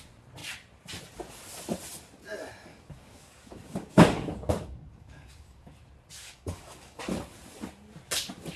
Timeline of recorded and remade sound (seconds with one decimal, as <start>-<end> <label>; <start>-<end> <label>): 0.0-2.7 recorded; 2.7-5.7 remade; 5.7-6.2 recorded; 6.2-7.0 remade; 7.0-8.6 recorded